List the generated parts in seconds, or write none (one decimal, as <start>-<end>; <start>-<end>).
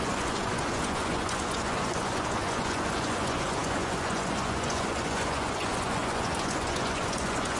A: 0.0-7.6